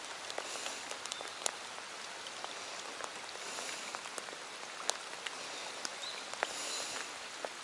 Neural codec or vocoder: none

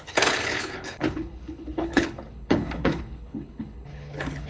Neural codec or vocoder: codec, HILCodec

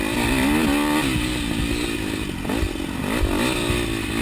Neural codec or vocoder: none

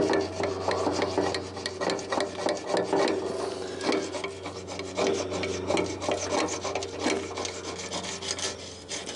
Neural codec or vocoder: none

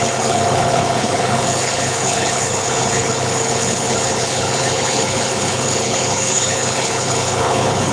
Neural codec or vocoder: codec, HILCodec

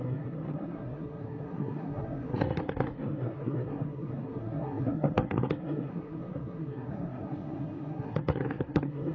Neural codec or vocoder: codec, SNAC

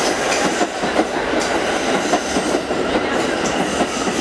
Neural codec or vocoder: none